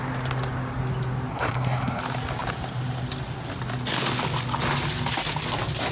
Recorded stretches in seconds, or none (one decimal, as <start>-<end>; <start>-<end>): 0.0-1.3; 2.0-5.9